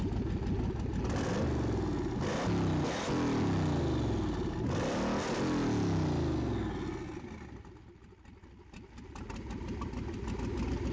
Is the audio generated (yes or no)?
no